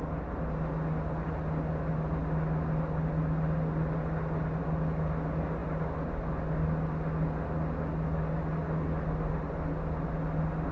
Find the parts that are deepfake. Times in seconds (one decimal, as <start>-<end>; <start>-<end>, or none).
none

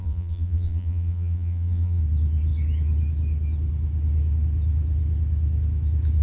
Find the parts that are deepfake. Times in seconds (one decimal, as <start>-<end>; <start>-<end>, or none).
0.0-2.0

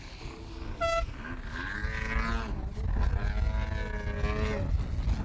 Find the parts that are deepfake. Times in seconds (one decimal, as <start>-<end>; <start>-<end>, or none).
none